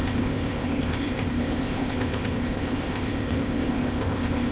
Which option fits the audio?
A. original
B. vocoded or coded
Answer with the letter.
B